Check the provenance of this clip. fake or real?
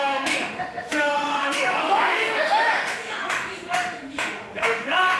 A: fake